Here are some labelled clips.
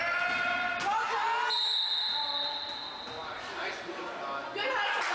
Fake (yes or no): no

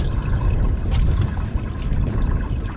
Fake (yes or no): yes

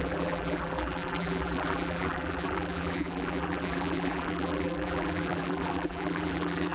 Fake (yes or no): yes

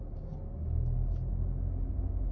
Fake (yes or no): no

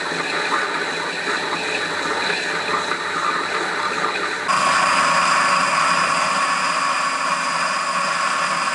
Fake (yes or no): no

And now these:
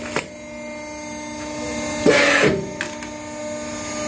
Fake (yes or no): no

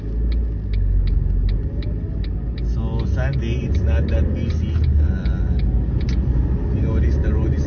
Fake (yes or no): no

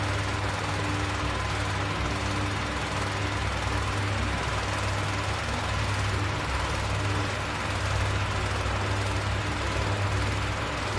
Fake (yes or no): no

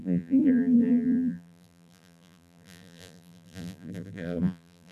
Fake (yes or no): yes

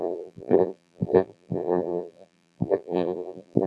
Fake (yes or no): yes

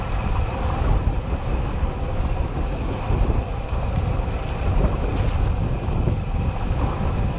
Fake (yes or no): no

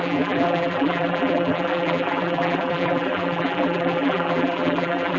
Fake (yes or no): yes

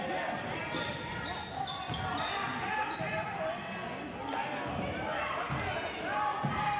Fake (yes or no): no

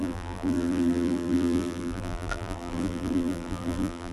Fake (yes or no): yes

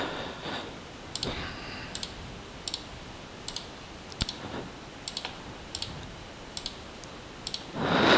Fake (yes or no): no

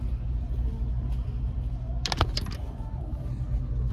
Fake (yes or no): no